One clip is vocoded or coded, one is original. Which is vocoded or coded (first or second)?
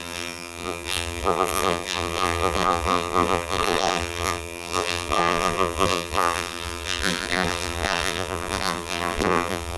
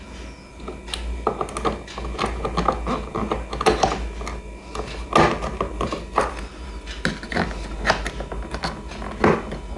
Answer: first